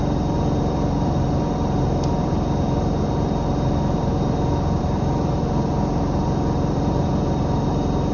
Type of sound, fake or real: fake